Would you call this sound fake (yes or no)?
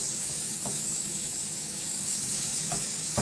yes